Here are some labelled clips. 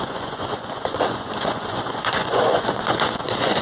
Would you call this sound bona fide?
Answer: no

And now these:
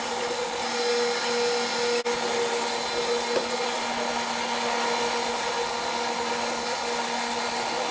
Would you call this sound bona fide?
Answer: yes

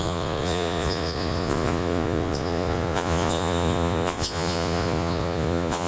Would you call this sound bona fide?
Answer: no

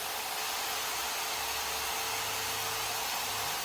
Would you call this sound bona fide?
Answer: yes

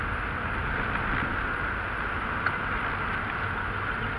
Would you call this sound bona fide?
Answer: yes